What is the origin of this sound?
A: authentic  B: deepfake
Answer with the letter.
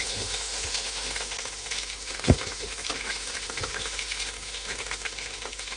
B